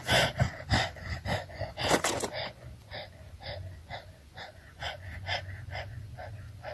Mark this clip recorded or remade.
remade